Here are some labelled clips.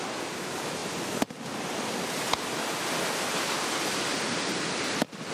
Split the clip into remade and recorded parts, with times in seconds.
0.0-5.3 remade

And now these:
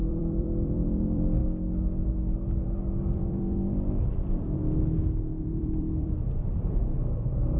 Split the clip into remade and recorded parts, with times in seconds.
0.0-1.4 remade; 1.4-3.0 recorded; 3.0-4.6 remade; 4.6-5.4 recorded; 5.4-7.6 remade

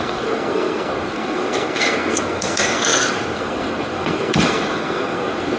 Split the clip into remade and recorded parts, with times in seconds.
0.0-5.6 remade

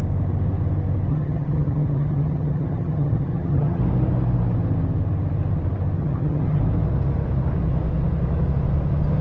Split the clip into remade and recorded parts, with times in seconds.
0.0-1.1 recorded; 1.1-3.8 remade; 3.8-6.0 recorded; 6.0-6.6 remade; 6.6-9.2 recorded